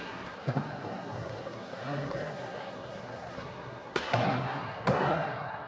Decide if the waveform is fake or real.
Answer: fake